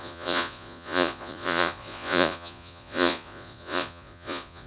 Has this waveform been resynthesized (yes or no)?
yes